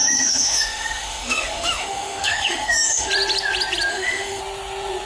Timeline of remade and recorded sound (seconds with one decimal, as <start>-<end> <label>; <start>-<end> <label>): 0.0-3.1 remade; 3.1-3.9 recorded; 3.9-4.4 remade; 4.4-5.1 recorded